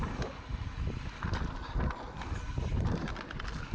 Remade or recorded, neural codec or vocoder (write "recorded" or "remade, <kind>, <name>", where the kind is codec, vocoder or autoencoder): recorded